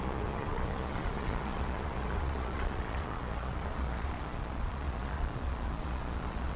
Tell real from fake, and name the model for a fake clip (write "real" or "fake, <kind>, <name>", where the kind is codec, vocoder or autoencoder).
fake, vocoder, Vocos